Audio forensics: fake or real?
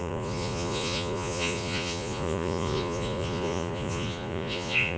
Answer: fake